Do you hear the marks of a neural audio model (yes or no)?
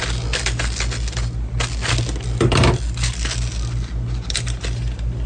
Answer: no